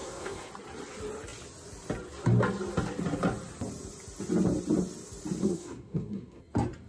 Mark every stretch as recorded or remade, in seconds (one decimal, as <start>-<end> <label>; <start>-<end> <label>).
0.0-0.5 remade; 0.5-5.4 recorded; 5.4-6.4 remade; 6.4-6.9 recorded